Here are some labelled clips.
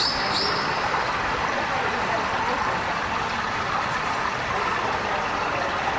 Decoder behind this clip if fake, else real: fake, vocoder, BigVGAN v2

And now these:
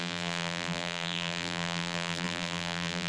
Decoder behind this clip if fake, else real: fake, vocoder, BigVGAN v2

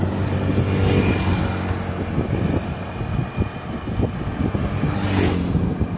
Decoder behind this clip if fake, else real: real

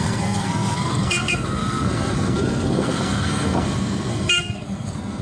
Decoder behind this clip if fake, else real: fake, codec, SNAC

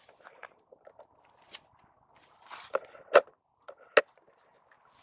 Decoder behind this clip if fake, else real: real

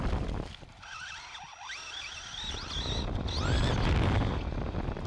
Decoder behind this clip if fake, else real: real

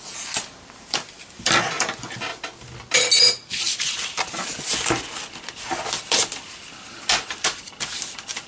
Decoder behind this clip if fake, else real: real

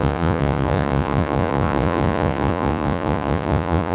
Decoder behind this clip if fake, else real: fake, vocoder, Vocos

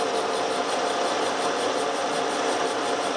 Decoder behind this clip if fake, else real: real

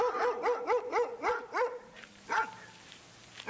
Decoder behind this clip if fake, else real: real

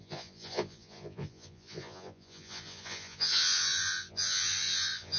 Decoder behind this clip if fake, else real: fake, vocoder, Vocos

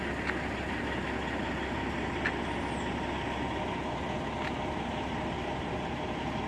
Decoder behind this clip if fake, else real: real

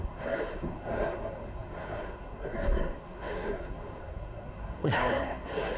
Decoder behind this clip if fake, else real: fake, codec, SNAC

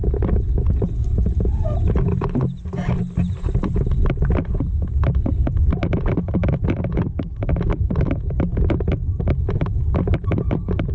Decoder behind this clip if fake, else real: real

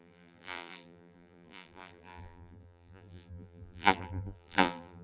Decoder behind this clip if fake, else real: fake, vocoder, BigVGAN v2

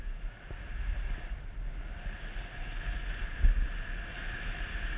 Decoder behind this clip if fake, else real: real